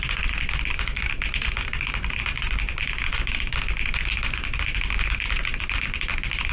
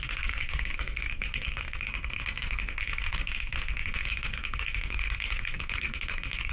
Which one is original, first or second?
first